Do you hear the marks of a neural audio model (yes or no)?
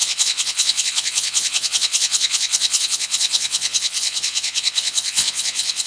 yes